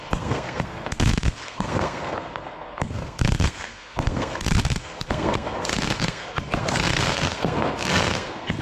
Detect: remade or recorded remade